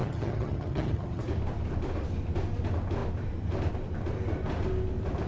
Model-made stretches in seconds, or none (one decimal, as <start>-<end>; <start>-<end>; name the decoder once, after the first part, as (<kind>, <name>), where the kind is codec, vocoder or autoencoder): 0.0-1.2 (vocoder, HiFi-GAN)